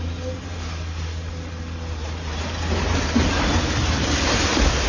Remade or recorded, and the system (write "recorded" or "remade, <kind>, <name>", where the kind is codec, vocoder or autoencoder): recorded